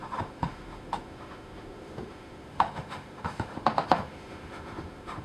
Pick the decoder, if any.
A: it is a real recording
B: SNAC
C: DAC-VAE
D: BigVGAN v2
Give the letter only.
C